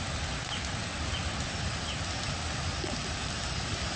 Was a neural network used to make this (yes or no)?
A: yes